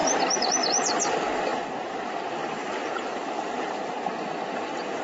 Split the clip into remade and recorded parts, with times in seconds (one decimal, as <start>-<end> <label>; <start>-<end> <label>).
0.0-2.4 recorded; 2.4-5.0 remade